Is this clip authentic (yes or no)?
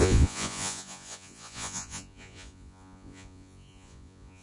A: no